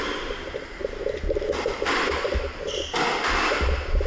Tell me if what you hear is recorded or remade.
recorded